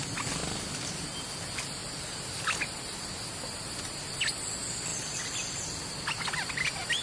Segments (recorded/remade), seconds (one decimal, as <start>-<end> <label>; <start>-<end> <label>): 0.0-7.0 recorded